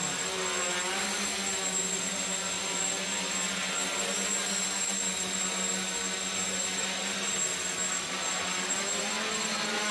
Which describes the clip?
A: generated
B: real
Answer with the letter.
B